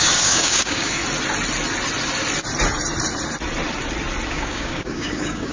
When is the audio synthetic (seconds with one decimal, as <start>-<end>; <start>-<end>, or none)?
0.0-1.0; 4.3-5.5